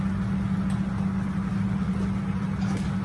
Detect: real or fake real